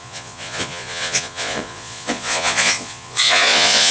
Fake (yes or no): yes